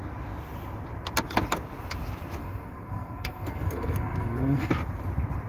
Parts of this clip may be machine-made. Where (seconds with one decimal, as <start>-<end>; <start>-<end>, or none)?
2.4-4.7